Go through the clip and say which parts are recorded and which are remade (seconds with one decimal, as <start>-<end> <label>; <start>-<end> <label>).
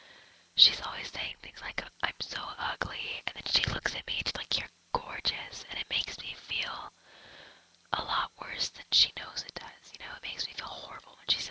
0.0-1.3 recorded; 1.3-1.9 remade; 1.9-3.5 recorded; 3.5-4.3 remade; 4.3-11.5 recorded